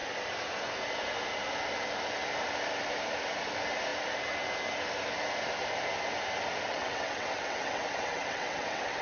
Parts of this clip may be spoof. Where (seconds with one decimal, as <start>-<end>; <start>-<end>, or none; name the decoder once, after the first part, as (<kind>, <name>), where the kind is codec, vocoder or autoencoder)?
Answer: 6.7-9.0 (vocoder, WaveNeXt)